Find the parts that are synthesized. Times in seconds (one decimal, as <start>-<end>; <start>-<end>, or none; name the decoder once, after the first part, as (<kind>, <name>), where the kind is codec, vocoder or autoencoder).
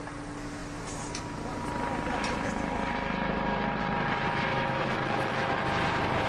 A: 4.5-5.5 (autoencoder, DAC-VAE)